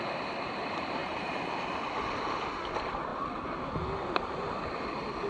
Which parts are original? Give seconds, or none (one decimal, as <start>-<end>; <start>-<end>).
0.0-1.0; 1.7-5.3